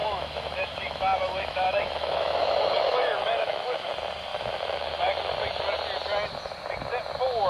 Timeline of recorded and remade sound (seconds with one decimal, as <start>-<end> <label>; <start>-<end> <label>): 0.0-3.9 remade; 3.9-4.3 recorded; 4.3-5.2 remade; 5.2-7.5 recorded